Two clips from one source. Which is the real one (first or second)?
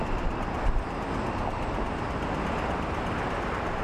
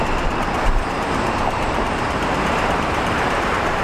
first